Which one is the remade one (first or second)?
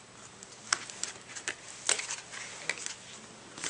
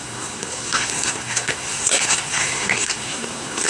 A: second